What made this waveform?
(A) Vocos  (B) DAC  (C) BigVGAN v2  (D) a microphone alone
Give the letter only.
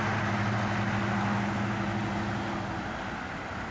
D